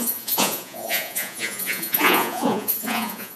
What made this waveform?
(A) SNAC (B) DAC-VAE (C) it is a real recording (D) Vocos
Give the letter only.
D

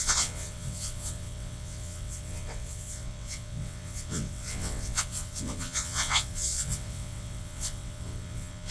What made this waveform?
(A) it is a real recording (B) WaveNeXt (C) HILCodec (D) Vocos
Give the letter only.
B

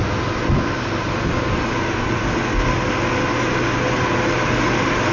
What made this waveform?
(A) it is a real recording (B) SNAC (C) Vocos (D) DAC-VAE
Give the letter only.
A